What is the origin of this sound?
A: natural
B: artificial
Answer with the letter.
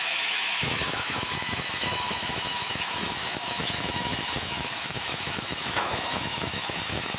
B